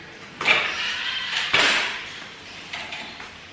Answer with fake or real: fake